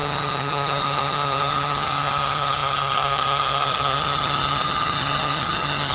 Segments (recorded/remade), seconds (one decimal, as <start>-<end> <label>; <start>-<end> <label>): 0.0-5.9 remade